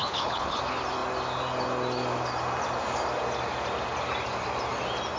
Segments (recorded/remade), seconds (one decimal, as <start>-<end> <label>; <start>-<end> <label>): 0.0-0.6 remade; 0.6-5.2 recorded